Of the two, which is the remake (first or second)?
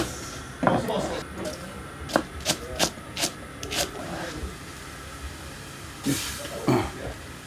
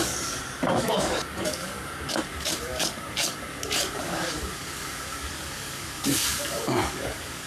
second